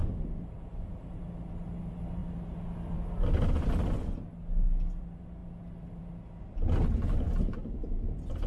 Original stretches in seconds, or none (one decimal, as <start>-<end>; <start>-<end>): 0.0-8.5